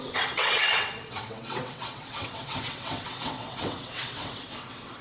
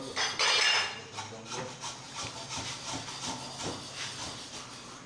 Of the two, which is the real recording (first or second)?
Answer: second